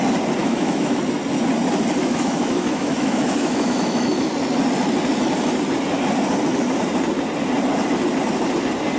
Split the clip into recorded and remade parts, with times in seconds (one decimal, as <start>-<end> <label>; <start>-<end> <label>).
0.0-0.4 recorded; 0.4-1.0 remade; 1.0-2.0 recorded; 2.0-4.3 remade; 4.3-9.0 recorded